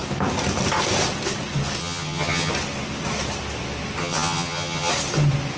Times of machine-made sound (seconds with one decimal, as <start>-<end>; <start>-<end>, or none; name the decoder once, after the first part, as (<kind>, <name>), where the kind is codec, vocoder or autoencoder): 1.8-2.5 (vocoder, HiFi-GAN); 4.0-4.9